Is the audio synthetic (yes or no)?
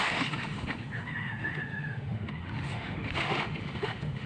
yes